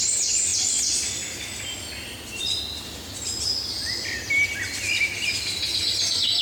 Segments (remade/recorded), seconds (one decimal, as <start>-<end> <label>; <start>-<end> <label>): 0.0-6.4 recorded